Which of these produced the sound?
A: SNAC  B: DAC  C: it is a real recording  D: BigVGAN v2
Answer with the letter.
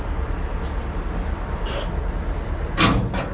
C